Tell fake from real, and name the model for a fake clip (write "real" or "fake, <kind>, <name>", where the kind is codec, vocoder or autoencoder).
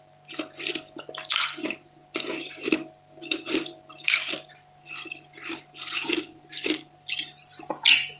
real